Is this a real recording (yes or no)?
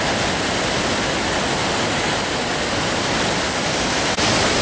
yes